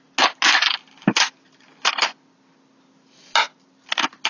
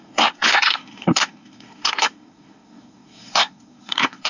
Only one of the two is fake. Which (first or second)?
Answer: second